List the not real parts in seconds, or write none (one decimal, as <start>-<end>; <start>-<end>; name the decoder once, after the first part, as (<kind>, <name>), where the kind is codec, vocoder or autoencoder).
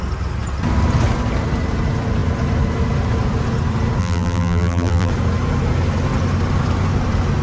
4.0-5.1 (vocoder, BigVGAN v2)